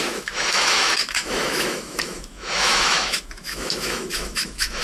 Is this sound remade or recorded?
remade